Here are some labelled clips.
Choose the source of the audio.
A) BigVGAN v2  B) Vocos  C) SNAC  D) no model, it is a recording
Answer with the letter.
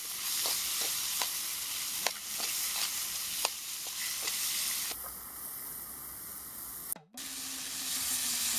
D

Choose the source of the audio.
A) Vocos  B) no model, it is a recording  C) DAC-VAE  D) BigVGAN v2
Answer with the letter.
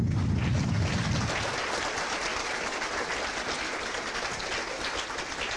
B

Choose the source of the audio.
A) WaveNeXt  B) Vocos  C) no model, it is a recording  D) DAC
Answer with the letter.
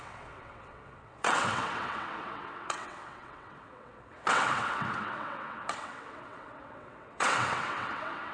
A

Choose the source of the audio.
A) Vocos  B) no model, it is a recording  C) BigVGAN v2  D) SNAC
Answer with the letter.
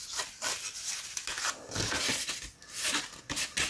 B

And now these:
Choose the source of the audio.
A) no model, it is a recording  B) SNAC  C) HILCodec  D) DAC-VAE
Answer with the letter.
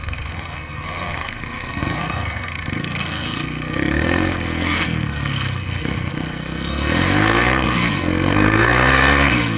B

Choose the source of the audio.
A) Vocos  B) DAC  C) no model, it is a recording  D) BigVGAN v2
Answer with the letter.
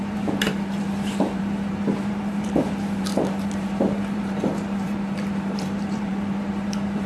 D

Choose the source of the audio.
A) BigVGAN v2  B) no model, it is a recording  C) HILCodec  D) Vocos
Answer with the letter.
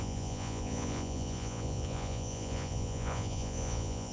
D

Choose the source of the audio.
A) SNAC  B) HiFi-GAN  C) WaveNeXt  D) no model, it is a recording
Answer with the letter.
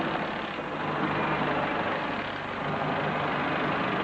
D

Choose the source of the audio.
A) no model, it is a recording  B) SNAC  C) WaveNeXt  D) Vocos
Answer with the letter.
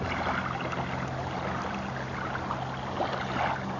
A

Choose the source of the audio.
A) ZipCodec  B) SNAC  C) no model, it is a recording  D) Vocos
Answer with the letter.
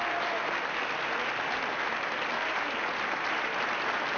C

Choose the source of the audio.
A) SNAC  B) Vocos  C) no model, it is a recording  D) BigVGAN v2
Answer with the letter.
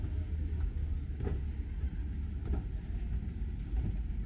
C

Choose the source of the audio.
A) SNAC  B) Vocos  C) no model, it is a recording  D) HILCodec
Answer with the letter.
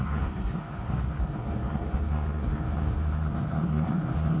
A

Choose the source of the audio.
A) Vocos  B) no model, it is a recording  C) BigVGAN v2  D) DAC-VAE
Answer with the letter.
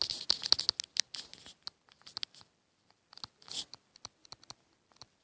B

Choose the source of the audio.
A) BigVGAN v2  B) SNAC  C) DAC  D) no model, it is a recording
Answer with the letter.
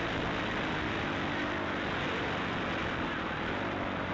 D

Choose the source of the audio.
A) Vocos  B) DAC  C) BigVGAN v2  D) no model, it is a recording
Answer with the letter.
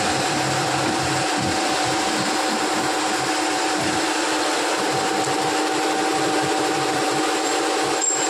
C